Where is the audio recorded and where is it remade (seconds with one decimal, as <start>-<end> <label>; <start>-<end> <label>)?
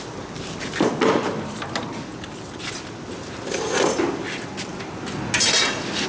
0.0-6.1 recorded